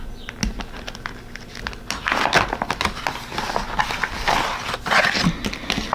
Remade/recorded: recorded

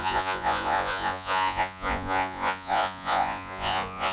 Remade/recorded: remade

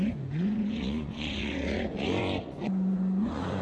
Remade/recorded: remade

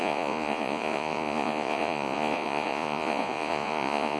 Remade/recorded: remade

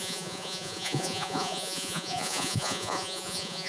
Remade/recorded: remade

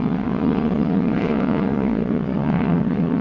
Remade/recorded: remade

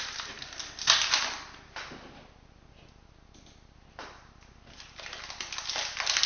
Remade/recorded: recorded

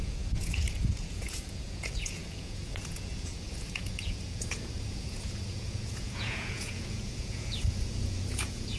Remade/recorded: remade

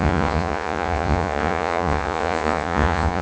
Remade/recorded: remade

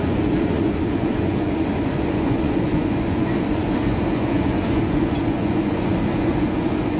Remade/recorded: remade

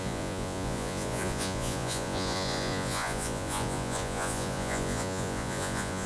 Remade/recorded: remade